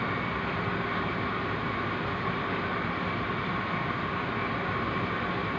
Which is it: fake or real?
real